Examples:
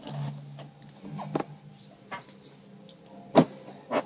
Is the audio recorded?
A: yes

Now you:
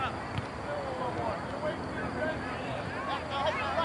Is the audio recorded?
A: yes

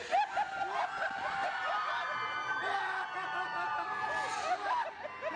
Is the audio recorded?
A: yes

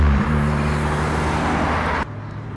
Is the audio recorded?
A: yes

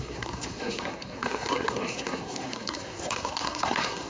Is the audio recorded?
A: no